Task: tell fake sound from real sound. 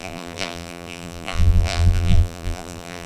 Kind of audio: fake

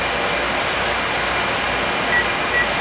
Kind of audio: real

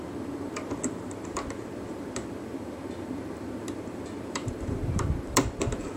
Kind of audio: fake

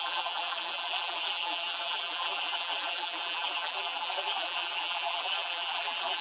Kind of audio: fake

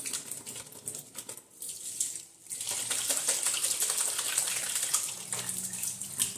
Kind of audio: real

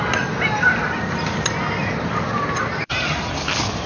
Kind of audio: real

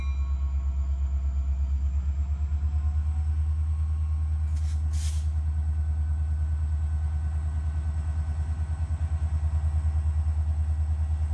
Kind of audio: real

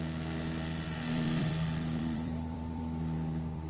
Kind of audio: fake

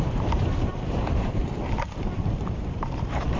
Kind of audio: fake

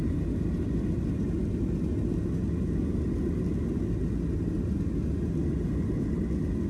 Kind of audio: real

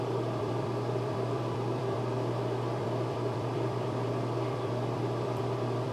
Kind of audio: fake